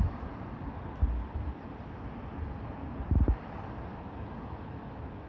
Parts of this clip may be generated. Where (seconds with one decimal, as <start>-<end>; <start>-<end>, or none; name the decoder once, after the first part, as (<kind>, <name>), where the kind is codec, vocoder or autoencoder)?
3.9-5.3 (autoencoder, DAC-VAE)